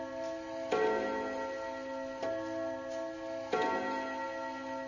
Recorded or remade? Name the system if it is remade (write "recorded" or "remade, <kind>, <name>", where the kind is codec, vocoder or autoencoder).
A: recorded